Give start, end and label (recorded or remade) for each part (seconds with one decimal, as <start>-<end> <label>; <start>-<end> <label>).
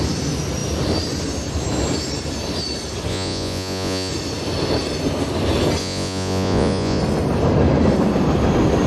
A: 0.0-3.1 recorded; 3.1-4.1 remade; 4.1-5.8 recorded; 5.8-7.0 remade; 7.0-8.9 recorded